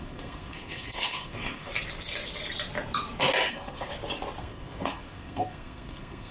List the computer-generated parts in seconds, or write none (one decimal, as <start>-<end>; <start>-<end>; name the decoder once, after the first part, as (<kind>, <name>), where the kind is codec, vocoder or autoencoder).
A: 0.0-1.7 (codec, SNAC); 3.5-3.9; 4.4-6.3